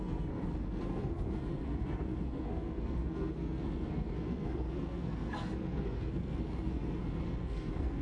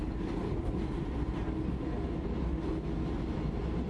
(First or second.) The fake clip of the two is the first